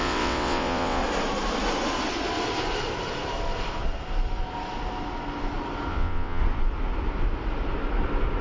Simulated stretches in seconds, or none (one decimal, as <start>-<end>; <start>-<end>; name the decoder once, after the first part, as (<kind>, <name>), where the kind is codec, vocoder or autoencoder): 0.0-1.0 (vocoder, WaveNeXt); 5.9-6.4